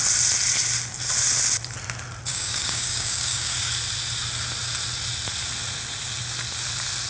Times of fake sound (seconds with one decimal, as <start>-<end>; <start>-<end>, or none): 2.3-3.7